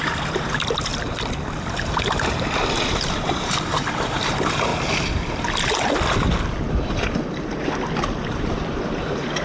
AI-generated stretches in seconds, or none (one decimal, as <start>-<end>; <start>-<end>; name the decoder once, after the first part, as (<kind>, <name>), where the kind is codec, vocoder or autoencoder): 0.0-0.9 (vocoder, BigVGAN v2); 1.6-4.7; 8.2-9.4